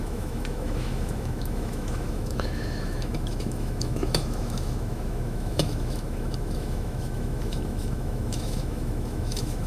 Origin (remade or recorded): remade